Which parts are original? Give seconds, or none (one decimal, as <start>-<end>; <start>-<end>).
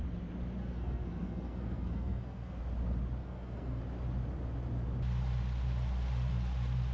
0.0-0.6; 2.6-3.2; 3.8-6.9